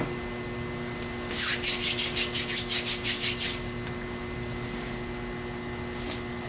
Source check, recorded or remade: recorded